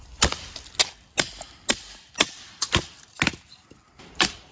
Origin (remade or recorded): recorded